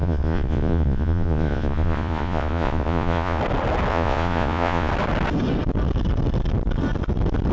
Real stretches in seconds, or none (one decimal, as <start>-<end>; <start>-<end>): 3.4-3.9; 4.9-7.5